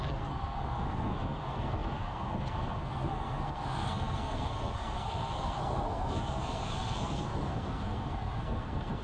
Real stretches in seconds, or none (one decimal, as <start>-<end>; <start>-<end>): none